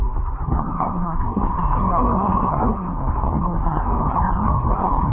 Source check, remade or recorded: remade